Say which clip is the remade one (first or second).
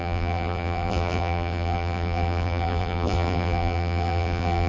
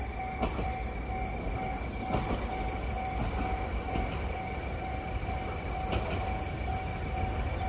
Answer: first